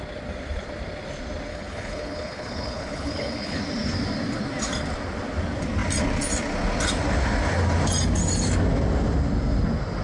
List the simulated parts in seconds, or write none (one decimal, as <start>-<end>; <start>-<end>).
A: 1.5-3.6